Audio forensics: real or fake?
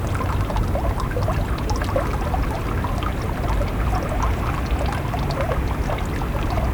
real